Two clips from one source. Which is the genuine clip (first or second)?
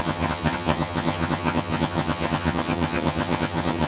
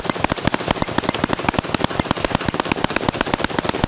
second